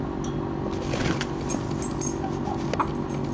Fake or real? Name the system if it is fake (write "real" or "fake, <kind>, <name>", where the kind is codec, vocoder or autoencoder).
real